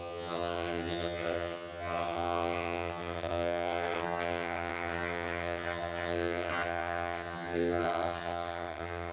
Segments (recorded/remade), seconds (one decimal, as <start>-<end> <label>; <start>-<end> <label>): 0.0-9.1 remade